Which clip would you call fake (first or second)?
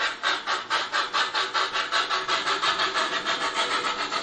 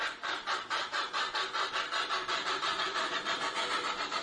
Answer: second